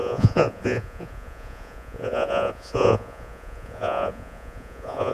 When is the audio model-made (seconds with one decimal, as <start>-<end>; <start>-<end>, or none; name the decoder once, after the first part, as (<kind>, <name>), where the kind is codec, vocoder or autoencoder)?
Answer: 0.0-5.1 (vocoder, Vocos)